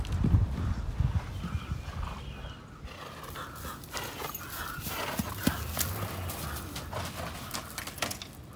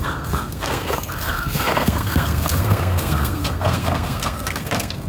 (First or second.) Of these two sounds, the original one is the first